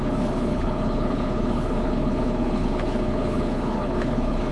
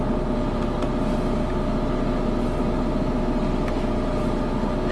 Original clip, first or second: second